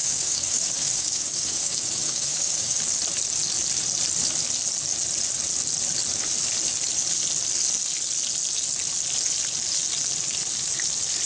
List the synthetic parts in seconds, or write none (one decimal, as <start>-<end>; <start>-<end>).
0.0-2.8